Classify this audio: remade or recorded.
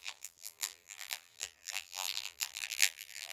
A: remade